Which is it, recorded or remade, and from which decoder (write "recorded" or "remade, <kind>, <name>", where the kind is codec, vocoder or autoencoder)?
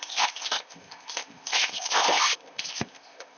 remade, codec, ZipCodec